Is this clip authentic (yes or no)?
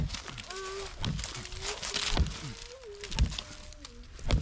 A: yes